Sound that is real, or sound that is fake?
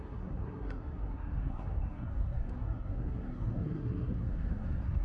fake